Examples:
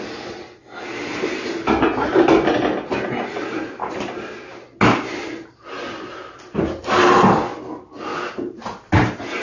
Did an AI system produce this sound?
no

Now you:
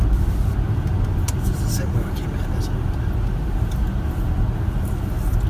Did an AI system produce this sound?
no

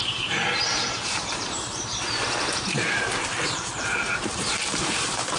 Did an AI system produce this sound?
yes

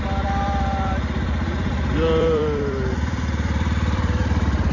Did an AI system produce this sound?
yes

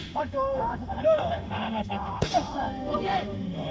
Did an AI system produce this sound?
yes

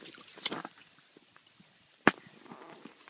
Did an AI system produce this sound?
yes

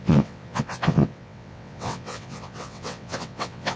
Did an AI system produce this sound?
yes